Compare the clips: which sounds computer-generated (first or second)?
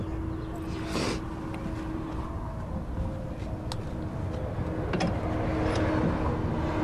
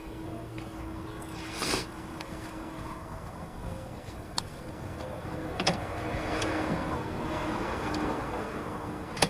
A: second